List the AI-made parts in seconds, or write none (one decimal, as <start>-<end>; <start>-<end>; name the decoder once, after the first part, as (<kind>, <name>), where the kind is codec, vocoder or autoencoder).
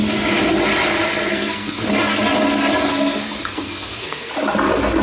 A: 1.3-1.9 (codec, SNAC); 2.9-4.3